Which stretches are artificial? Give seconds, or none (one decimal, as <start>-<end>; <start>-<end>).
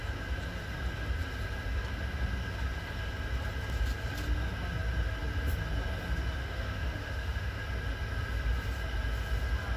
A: 6.4-7.6